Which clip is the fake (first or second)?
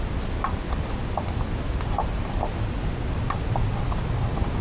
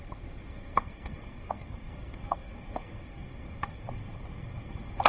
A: second